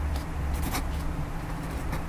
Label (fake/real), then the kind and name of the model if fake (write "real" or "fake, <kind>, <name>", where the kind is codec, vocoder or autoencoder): fake, vocoder, BigVGAN v2